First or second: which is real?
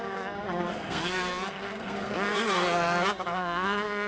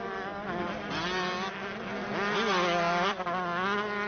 second